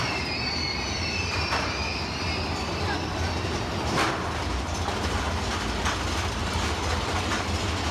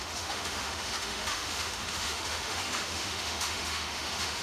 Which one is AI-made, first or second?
second